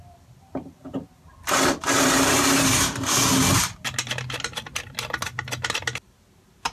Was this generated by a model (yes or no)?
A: no